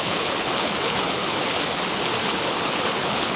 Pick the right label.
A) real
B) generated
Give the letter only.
B